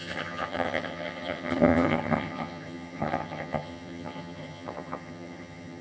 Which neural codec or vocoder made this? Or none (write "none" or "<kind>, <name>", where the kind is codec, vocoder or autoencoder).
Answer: vocoder, HiFi-GAN